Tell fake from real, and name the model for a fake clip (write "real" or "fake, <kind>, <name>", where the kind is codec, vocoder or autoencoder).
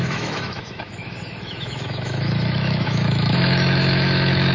fake, autoencoder, DAC-VAE